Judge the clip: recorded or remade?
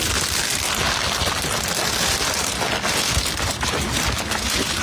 recorded